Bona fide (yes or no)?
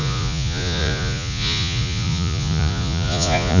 no